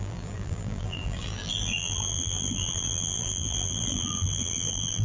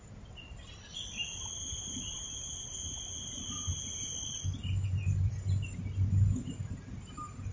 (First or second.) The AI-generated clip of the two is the first